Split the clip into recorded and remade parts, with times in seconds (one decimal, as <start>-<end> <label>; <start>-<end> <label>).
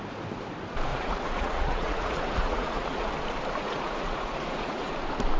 0.0-0.9 recorded; 0.9-3.1 remade; 3.1-3.6 recorded; 3.6-4.9 remade; 4.9-5.4 recorded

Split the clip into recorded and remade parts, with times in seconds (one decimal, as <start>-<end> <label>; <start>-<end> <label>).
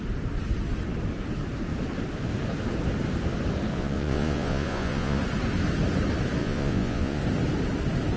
0.0-3.7 recorded; 3.7-5.2 remade; 5.2-6.4 recorded; 6.4-7.2 remade; 7.2-8.2 recorded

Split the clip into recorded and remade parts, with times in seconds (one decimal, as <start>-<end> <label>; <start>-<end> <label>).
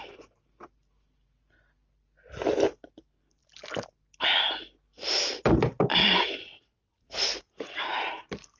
0.0-6.9 recorded; 6.9-8.0 remade; 8.0-8.6 recorded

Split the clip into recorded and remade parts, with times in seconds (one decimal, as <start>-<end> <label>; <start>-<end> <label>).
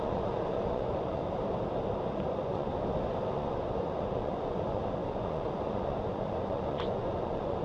0.0-1.2 remade; 1.2-2.1 recorded; 2.1-2.7 remade; 2.7-3.3 recorded; 3.3-7.6 remade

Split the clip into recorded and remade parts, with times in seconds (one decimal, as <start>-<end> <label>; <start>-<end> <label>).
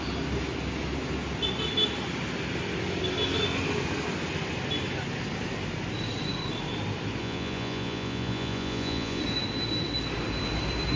0.0-7.2 recorded; 7.2-9.2 remade; 9.2-11.0 recorded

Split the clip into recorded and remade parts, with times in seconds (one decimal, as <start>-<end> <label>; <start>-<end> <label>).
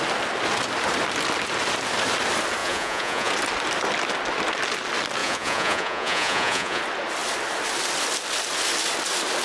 0.0-2.6 recorded; 2.6-3.3 remade; 3.3-5.2 recorded; 5.2-6.8 remade; 6.8-9.4 recorded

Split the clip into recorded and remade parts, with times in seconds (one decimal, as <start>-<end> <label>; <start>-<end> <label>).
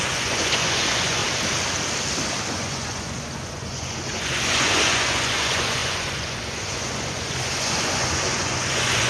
0.0-1.2 remade; 1.2-2.5 recorded; 2.5-9.1 remade